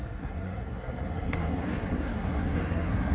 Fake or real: fake